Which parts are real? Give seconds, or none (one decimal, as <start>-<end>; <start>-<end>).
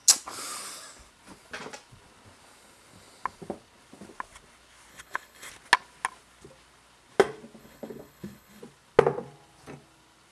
0.0-4.9; 5.5-7.6; 8.6-10.3